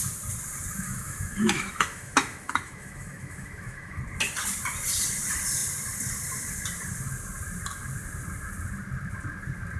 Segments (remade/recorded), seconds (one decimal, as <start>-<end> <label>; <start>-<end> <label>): 0.0-0.7 recorded; 0.7-4.0 remade; 4.0-9.8 recorded